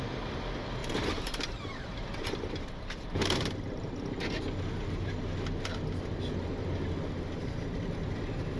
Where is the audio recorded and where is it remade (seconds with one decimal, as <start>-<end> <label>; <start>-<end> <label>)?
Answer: 0.0-0.8 recorded; 0.8-4.0 remade; 4.0-8.6 recorded